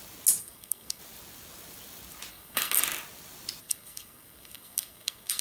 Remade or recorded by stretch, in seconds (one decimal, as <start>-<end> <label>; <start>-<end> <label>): 0.0-0.4 recorded; 0.4-1.0 remade; 1.0-2.3 recorded; 2.3-2.8 remade; 2.8-3.6 recorded; 3.6-5.4 remade